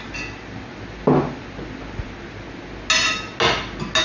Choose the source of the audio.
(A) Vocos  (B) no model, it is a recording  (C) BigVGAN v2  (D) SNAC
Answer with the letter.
B